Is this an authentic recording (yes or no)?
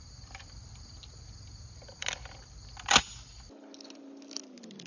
yes